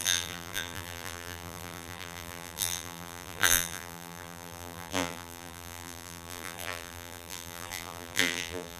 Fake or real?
fake